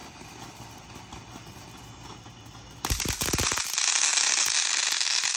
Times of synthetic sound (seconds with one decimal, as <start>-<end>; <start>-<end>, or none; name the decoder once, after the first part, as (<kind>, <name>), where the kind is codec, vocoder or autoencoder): none